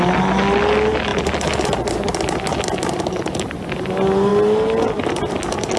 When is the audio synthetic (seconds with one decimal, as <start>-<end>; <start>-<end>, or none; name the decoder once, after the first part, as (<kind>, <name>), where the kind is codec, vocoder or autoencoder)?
none